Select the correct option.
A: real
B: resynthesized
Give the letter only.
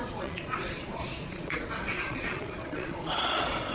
B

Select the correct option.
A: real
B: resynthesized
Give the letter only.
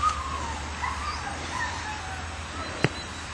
A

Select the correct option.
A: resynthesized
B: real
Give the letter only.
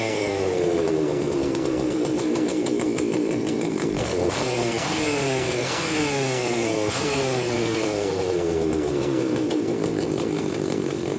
A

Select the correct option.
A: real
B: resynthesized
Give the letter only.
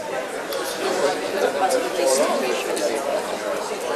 B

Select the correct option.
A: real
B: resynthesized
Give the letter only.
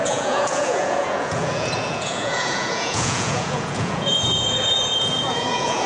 B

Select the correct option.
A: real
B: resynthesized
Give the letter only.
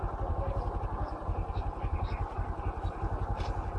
A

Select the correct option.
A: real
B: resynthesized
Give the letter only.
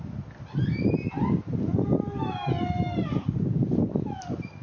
A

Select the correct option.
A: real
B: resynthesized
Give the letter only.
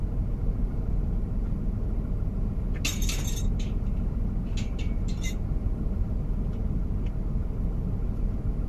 A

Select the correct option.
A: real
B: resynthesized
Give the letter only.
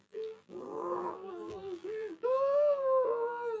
B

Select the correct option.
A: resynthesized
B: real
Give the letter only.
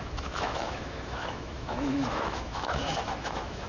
A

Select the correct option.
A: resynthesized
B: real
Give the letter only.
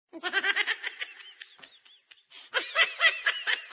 B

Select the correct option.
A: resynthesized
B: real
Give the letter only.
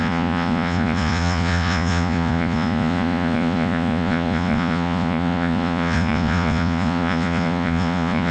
A